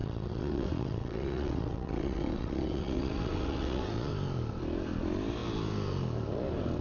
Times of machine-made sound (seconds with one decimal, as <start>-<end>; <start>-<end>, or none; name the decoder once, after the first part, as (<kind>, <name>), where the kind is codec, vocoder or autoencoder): 0.0-4.1 (vocoder, WaveNeXt)